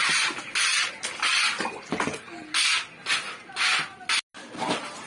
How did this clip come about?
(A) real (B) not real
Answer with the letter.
A